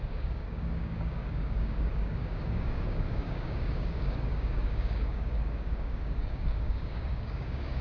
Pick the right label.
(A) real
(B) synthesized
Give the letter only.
B